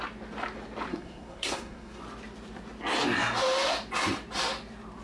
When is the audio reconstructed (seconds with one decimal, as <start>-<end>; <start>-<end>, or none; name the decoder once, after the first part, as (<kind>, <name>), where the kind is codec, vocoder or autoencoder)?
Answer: 0.9-2.0 (codec, SNAC)